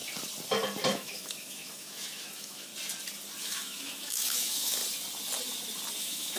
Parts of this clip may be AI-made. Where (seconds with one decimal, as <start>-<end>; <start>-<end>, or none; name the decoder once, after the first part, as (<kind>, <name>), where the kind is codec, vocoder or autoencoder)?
0.9-2.7 (autoencoder, DAC-VAE); 3.4-4.8; 6.0-6.4